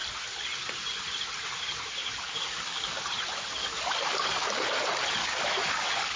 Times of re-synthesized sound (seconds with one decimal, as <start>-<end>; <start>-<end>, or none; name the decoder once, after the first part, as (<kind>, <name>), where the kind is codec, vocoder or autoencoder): 2.0-3.0 (codec, DAC); 3.6-4.5; 5.2-6.2